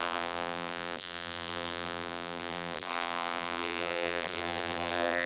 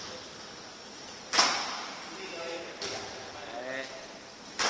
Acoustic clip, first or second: second